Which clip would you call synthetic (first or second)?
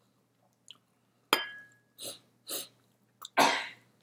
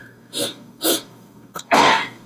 second